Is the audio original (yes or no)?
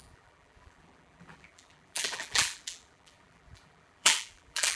no